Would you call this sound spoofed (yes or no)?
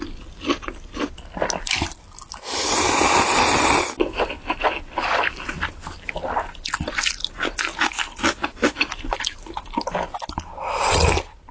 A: no